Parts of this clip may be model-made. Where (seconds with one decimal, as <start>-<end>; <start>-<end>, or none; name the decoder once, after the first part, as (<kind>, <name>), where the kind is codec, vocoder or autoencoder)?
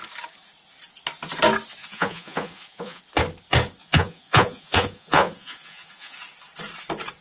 1.8-3.0 (vocoder, Vocos); 3.8-6.2